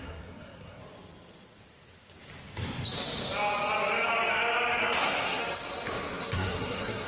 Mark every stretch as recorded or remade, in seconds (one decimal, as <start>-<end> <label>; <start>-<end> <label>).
0.0-0.8 remade; 0.8-4.8 recorded; 4.8-5.4 remade; 5.4-6.2 recorded; 6.2-7.1 remade